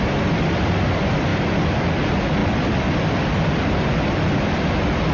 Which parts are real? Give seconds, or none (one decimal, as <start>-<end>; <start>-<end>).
0.0-5.1